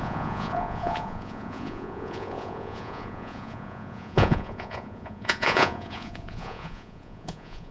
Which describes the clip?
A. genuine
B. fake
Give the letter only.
B